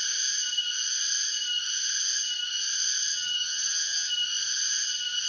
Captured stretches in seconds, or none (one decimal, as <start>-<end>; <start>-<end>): 0.0-3.1; 4.1-5.3